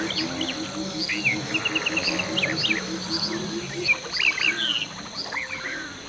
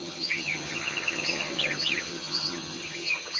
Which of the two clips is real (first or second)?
first